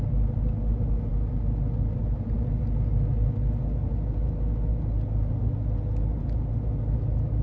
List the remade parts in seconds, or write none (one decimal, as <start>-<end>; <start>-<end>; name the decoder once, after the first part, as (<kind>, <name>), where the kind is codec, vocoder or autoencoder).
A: none